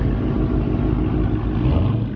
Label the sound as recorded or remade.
recorded